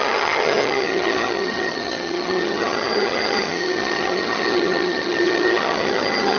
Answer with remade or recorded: remade